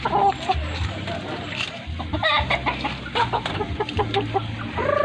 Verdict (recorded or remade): remade